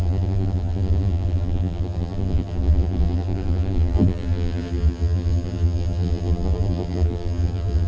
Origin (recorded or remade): remade